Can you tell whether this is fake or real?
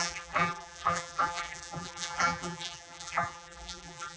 fake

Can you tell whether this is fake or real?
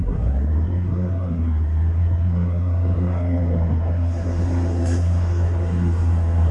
fake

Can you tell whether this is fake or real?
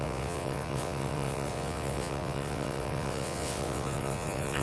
fake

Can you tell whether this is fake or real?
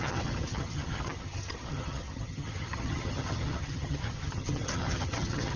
fake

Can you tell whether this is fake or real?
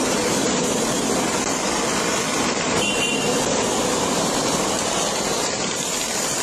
fake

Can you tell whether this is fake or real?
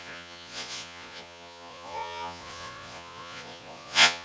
fake